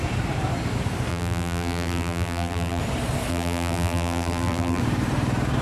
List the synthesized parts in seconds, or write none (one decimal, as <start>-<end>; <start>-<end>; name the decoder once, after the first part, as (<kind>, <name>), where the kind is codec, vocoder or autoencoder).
1.1-2.8 (vocoder, BigVGAN v2); 3.3-4.8